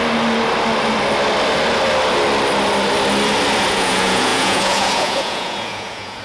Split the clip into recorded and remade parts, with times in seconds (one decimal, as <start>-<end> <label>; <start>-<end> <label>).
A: 0.0-3.7 recorded; 3.7-6.2 remade